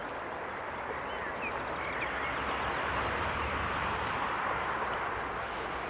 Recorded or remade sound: recorded